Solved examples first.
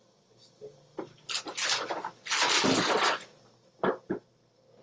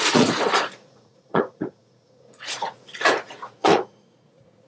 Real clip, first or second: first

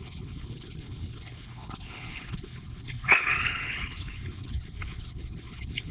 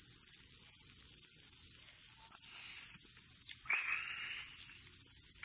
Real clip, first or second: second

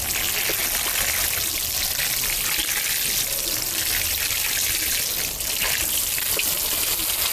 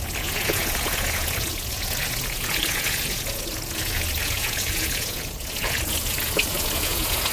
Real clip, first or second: first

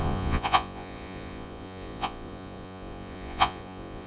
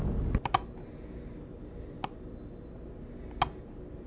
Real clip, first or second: second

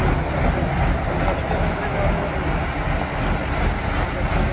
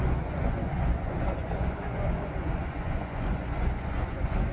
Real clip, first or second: first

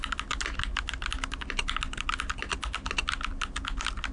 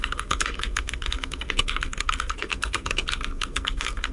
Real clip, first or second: first